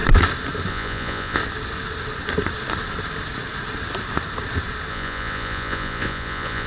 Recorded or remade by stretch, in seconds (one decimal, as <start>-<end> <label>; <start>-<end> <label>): 0.0-0.7 recorded; 0.7-1.4 remade; 1.4-4.9 recorded; 4.9-6.7 remade